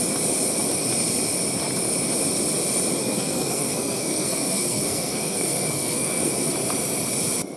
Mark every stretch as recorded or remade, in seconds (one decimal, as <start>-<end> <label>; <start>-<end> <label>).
0.0-3.0 recorded; 3.0-6.5 remade; 6.5-7.6 recorded